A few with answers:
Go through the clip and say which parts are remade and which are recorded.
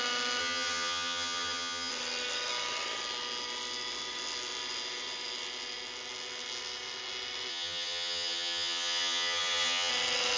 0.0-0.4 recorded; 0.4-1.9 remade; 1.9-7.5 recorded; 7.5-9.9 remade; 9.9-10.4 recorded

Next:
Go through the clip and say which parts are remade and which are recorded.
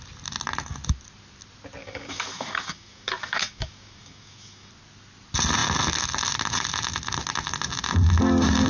0.0-1.8 recorded; 1.8-4.7 remade; 4.7-8.7 recorded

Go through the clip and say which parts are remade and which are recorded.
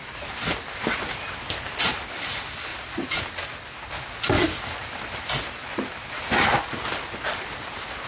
0.0-2.7 recorded; 2.7-3.2 remade; 3.2-8.1 recorded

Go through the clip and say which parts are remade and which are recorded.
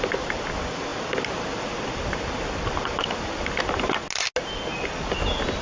0.0-5.6 recorded